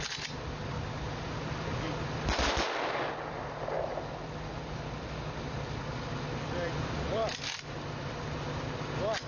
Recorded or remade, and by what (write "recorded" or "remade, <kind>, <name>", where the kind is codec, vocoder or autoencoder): recorded